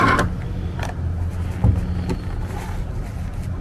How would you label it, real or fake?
real